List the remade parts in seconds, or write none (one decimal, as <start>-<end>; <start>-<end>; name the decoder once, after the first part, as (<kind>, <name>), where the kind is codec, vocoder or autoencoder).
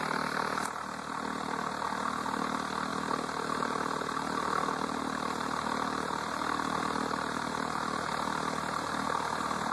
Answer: 2.9-8.1 (vocoder, BigVGAN v2)